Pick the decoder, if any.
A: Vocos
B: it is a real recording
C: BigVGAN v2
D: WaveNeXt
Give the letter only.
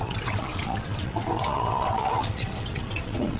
D